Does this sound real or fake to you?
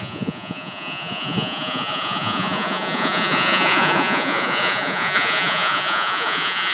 fake